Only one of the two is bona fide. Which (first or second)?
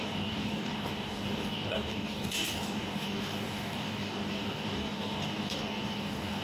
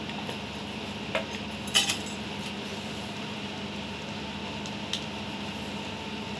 second